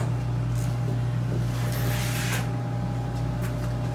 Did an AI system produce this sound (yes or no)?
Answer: no